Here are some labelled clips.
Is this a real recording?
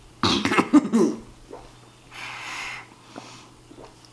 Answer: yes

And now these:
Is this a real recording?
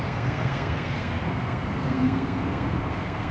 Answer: no